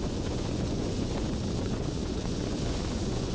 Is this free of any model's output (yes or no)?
no